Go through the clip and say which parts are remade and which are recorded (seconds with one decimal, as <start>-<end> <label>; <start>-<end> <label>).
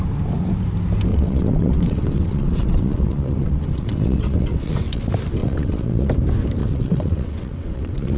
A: 0.0-1.1 recorded; 1.1-5.0 remade; 5.0-5.4 recorded; 5.4-6.1 remade; 6.1-6.6 recorded; 6.6-8.2 remade